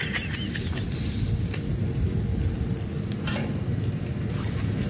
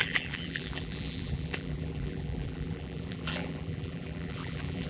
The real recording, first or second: first